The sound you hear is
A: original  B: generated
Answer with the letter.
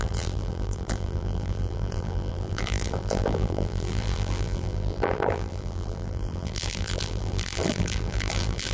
B